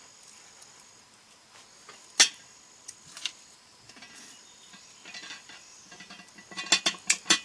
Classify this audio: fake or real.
real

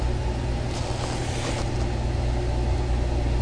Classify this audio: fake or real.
real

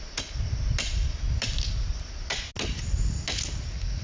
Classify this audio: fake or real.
real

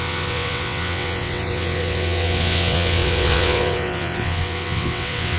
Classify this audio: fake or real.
fake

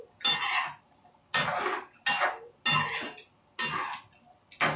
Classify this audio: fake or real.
real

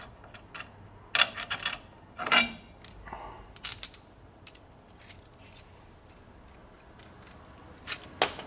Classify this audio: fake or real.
real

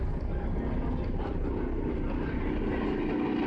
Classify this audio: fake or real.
real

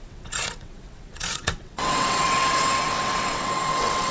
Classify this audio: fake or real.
fake